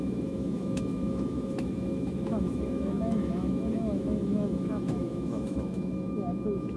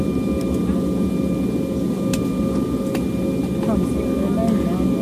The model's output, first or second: first